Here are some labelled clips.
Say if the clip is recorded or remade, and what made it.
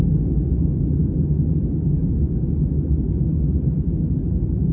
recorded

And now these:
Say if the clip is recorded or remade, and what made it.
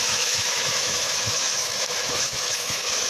remade, autoencoder, DAC-VAE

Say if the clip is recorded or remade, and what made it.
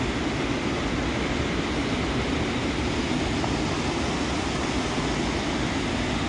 recorded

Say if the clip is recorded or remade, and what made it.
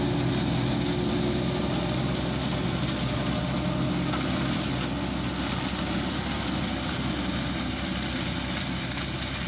recorded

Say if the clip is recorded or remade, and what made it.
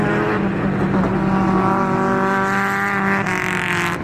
recorded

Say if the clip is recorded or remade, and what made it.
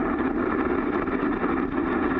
recorded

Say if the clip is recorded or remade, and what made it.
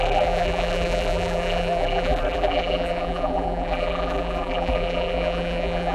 remade, vocoder, BigVGAN v2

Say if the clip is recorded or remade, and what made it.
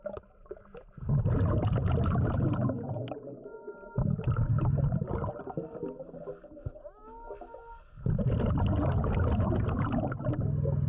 recorded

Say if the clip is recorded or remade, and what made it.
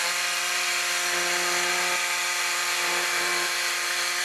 recorded